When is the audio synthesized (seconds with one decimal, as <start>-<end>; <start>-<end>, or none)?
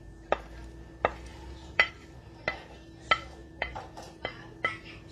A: 1.3-1.9; 3.4-4.3